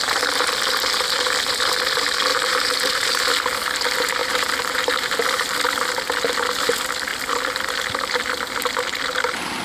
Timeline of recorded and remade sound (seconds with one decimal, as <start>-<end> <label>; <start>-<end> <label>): 0.0-2.3 recorded; 2.3-3.1 remade; 3.1-4.2 recorded; 4.2-5.1 remade; 5.1-9.6 recorded